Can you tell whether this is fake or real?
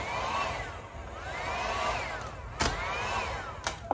real